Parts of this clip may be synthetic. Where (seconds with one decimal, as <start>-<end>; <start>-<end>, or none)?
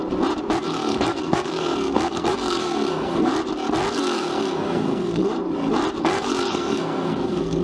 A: 0.6-3.3; 3.9-5.2; 6.0-7.6